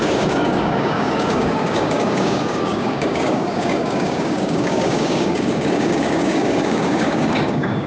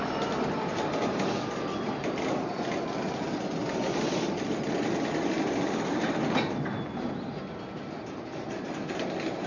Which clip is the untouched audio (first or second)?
second